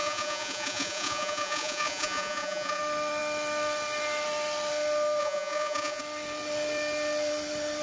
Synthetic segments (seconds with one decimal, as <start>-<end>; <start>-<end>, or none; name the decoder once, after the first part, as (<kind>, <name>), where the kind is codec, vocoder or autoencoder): 0.0-2.8 (vocoder, Vocos); 5.2-6.0

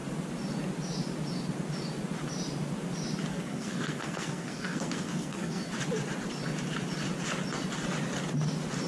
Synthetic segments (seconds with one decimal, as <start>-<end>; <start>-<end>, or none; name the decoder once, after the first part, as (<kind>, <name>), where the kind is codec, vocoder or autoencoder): 3.3-5.7 (codec, SNAC)

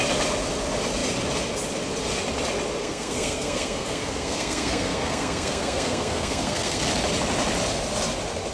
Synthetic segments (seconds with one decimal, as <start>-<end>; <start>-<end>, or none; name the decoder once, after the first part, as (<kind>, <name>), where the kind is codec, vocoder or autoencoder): 2.8-6.8 (codec, SNAC)

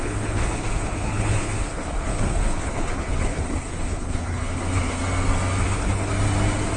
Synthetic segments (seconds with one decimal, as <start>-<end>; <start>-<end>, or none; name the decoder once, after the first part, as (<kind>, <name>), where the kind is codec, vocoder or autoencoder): 0.0-5.0 (codec, HILCodec); 5.6-6.1

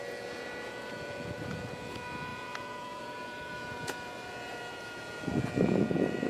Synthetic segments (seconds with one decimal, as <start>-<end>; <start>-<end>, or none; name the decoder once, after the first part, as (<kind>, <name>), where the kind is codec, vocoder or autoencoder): 0.0-6.3 (vocoder, Vocos)

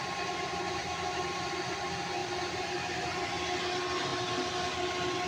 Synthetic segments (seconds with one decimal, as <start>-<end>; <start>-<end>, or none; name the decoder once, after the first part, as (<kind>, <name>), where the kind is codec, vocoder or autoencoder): 0.0-1.4 (vocoder, BigVGAN v2); 2.2-3.3

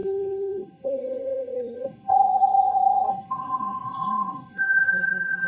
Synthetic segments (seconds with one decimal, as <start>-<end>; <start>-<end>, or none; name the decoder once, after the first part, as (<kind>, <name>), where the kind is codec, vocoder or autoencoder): 0.0-5.5 (codec, SNAC)

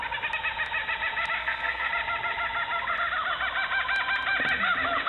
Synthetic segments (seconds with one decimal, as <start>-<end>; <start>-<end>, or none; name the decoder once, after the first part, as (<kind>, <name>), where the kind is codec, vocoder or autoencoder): 1.4-1.9 (codec, SNAC)